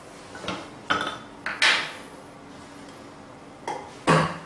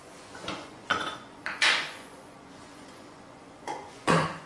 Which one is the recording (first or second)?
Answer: first